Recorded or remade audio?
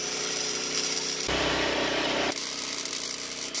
remade